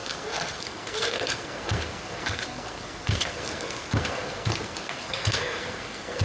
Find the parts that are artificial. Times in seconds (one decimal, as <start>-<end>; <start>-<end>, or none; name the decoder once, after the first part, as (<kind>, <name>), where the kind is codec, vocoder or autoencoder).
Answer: 0.0-6.2 (codec, SNAC)